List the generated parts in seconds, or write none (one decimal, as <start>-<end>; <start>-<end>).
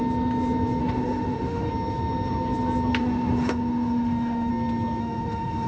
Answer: 0.8-1.7; 3.0-4.5; 5.0-5.7